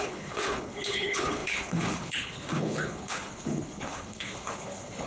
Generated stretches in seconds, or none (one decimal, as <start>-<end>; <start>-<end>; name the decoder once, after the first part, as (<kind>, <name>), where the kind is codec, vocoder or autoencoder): 0.0-5.1 (codec, HILCodec)